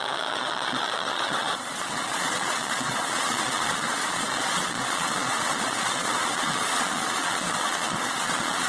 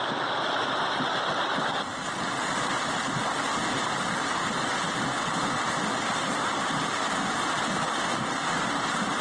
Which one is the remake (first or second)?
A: first